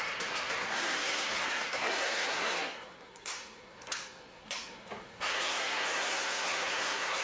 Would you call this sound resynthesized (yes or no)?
yes